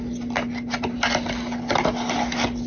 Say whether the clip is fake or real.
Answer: real